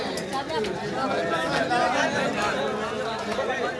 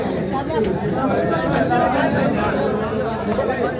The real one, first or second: first